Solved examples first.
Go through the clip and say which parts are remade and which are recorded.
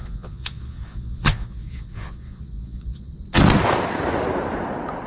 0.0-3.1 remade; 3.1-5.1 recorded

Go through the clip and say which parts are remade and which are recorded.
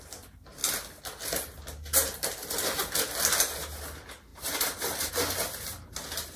0.0-4.3 recorded; 4.3-5.1 remade; 5.1-6.4 recorded